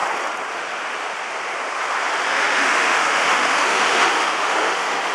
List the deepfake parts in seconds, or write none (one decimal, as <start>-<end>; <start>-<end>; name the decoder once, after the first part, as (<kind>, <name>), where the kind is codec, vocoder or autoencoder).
2.3-5.1 (autoencoder, DAC-VAE)